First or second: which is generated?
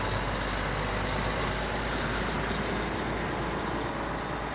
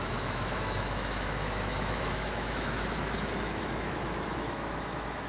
second